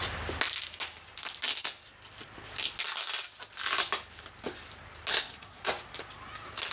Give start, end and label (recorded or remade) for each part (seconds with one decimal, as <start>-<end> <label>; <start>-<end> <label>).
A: 0.0-5.1 recorded; 5.1-5.6 remade; 5.6-6.7 recorded

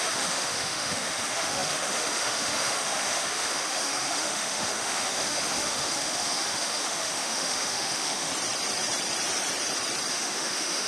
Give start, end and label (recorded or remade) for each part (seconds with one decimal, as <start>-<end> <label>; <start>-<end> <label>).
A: 0.0-8.3 remade; 8.3-10.1 recorded; 10.1-10.9 remade

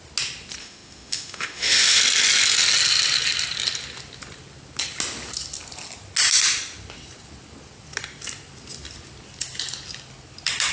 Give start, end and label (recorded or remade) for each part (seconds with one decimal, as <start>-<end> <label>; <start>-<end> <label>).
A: 0.0-0.6 recorded; 0.6-2.0 remade; 2.0-10.7 recorded

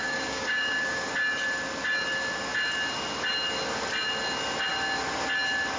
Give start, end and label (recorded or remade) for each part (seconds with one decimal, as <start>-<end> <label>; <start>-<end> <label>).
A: 0.0-1.1 remade; 1.1-5.8 recorded

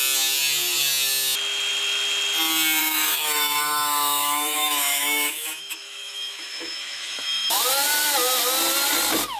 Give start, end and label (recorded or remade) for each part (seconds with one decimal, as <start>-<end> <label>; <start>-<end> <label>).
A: 0.0-2.8 recorded; 2.8-7.6 remade; 7.6-9.4 recorded

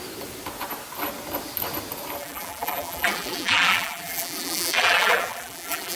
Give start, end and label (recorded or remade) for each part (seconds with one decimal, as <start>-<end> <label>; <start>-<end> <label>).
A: 0.0-2.2 recorded; 2.2-6.0 remade

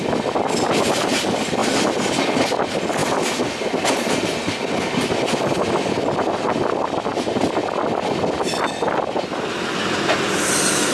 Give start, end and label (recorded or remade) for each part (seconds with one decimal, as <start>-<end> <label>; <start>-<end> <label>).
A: 0.0-10.9 recorded

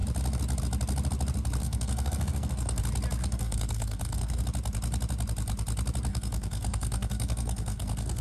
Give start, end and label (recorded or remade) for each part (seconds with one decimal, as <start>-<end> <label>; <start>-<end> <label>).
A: 0.0-1.6 recorded; 1.6-2.8 remade; 2.8-3.2 recorded; 3.2-4.4 remade; 4.4-6.1 recorded; 6.1-8.2 remade